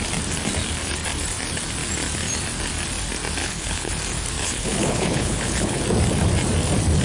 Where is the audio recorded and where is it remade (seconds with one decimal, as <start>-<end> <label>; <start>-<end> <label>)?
0.0-3.4 recorded; 3.4-3.9 remade; 3.9-4.4 recorded; 4.4-5.8 remade; 5.8-7.0 recorded